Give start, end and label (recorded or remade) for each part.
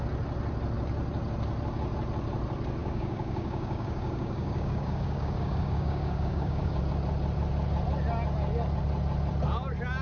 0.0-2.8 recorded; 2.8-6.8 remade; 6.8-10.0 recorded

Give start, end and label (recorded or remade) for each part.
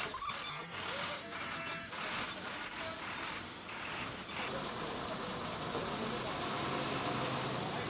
0.0-0.5 recorded; 0.5-1.9 remade; 1.9-7.9 recorded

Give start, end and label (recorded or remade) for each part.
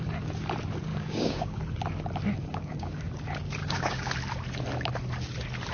0.0-0.9 recorded; 0.9-1.6 remade; 1.6-2.4 recorded; 2.4-3.1 remade; 3.1-3.6 recorded; 3.6-4.1 remade; 4.1-5.7 recorded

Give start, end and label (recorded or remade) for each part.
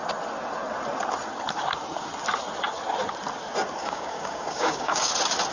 0.0-3.8 recorded; 3.8-5.1 remade; 5.1-5.5 recorded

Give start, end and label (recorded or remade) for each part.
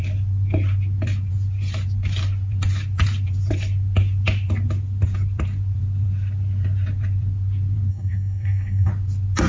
0.0-7.9 recorded; 7.9-8.9 remade; 8.9-9.5 recorded